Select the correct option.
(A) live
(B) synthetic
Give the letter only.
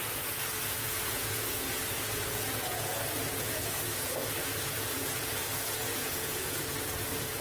B